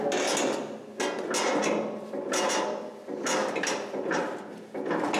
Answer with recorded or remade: recorded